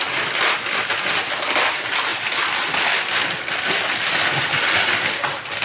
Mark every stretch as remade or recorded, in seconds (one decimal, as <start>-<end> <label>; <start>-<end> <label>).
0.0-5.6 recorded